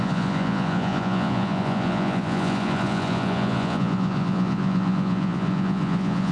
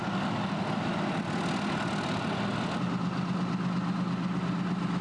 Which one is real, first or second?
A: second